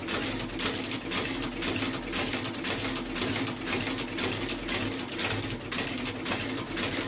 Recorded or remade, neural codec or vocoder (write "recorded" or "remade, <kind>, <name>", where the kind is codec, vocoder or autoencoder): recorded